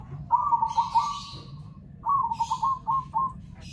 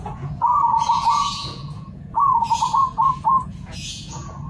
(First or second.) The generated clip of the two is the second